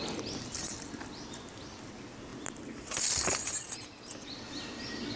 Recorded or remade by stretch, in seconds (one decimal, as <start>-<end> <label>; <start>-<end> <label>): 0.0-5.2 recorded